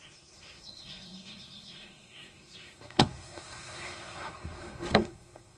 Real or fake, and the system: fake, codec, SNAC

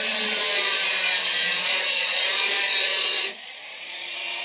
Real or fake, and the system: fake, vocoder, Vocos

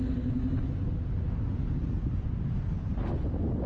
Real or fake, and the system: real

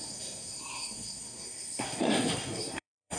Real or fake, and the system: fake, codec, SNAC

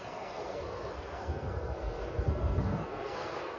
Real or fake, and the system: fake, codec, SNAC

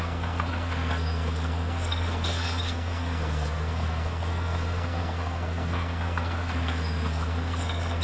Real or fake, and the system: fake, codec, SNAC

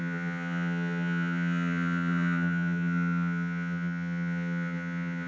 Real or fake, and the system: fake, vocoder, HiFi-GAN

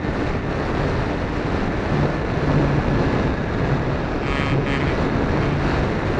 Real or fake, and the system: real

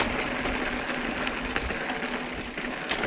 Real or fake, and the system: real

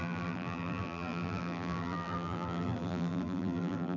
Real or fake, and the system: fake, vocoder, BigVGAN v2